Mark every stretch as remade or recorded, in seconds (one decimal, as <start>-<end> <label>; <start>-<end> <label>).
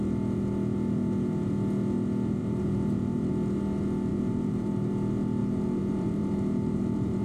0.0-2.4 recorded; 2.4-3.3 remade; 3.3-4.1 recorded; 4.1-4.9 remade; 4.9-5.4 recorded; 5.4-7.2 remade